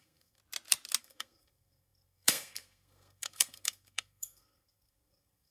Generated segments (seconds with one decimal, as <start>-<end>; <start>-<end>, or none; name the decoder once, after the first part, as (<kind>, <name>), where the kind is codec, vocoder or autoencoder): 0.0-0.4 (codec, SNAC); 1.0-5.5